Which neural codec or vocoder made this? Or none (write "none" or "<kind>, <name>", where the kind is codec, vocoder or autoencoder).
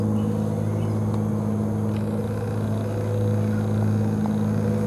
none